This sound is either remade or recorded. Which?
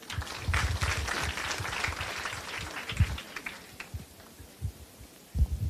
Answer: recorded